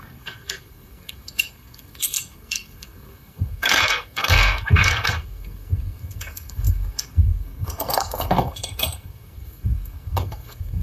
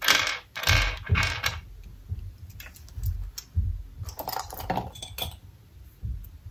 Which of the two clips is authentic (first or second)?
second